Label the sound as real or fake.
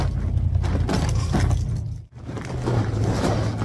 real